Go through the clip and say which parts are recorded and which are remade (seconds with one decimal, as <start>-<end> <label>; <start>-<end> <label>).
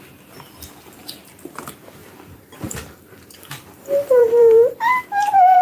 0.0-2.0 recorded; 2.0-5.6 remade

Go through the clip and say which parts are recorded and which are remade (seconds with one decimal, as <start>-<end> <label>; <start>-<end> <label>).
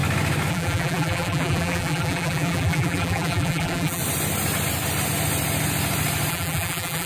0.0-0.5 recorded; 0.5-4.0 remade; 4.0-6.3 recorded; 6.3-7.1 remade